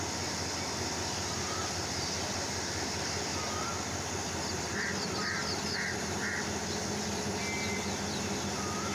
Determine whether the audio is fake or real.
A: real